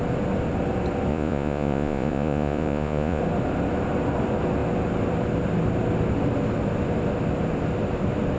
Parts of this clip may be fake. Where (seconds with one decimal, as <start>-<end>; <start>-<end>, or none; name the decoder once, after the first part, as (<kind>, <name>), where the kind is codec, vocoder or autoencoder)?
1.1-3.2 (vocoder, Vocos)